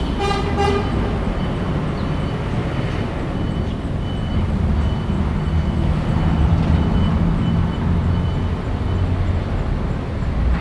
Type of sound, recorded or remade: recorded